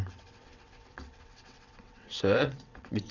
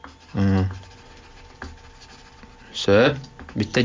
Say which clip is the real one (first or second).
second